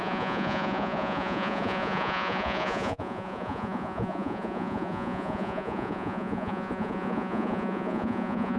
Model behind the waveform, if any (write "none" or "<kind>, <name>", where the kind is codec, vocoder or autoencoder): vocoder, Vocos